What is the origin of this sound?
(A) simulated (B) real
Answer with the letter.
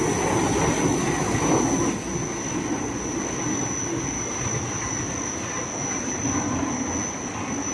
B